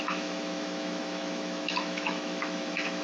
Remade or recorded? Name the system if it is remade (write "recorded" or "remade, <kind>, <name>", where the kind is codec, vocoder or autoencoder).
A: remade, autoencoder, DAC-VAE